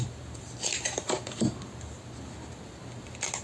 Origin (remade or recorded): recorded